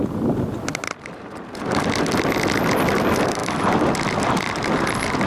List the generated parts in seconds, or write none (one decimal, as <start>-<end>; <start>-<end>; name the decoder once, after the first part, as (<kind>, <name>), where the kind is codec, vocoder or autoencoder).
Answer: none